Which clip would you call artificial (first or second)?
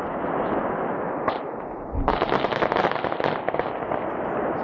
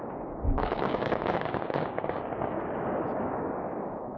second